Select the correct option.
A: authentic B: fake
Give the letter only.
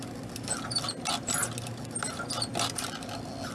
A